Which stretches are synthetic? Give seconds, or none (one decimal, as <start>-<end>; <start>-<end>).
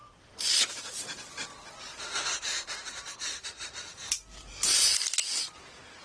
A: 0.0-1.3; 2.8-4.1